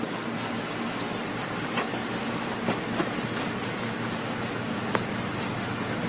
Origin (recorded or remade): recorded